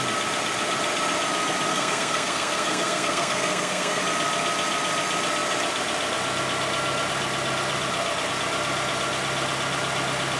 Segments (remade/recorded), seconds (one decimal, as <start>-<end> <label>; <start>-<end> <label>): 0.0-1.7 recorded; 1.7-4.0 remade; 4.0-10.4 recorded